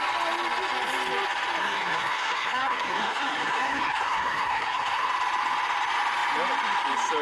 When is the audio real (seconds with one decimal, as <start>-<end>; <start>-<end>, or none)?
0.0-1.6; 5.1-7.2